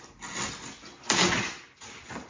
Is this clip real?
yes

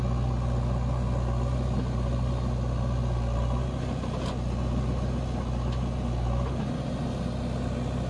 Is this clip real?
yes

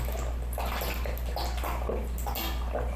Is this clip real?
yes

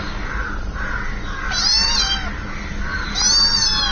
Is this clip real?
yes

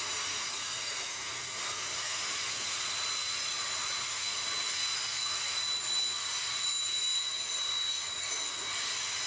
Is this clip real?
yes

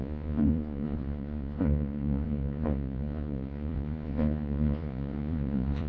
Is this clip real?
no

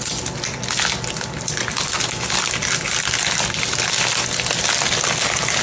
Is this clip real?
yes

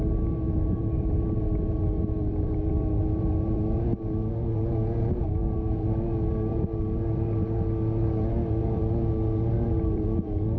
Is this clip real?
no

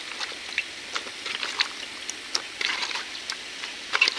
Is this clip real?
yes